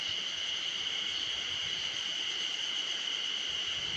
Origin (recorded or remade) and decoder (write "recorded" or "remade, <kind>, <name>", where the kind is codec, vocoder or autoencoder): recorded